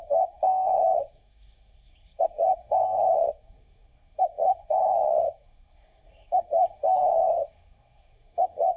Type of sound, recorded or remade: remade